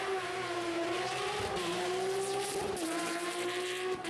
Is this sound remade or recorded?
recorded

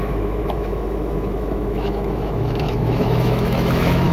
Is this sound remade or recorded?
remade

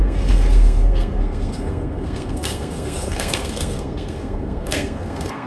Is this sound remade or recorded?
remade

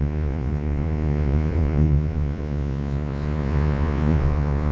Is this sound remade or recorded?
remade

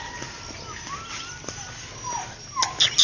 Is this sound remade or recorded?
recorded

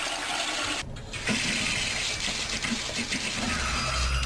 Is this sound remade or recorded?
recorded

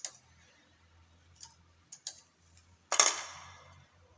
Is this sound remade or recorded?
recorded